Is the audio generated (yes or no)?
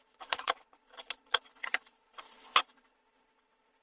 yes